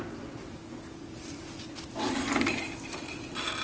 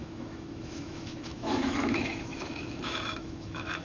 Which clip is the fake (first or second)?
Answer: second